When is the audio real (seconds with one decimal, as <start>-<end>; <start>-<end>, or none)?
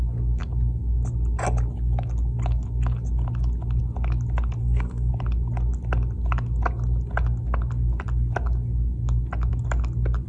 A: 0.0-4.6; 5.1-10.3